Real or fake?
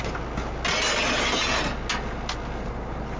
real